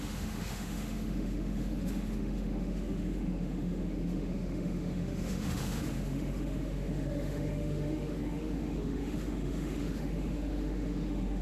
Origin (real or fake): fake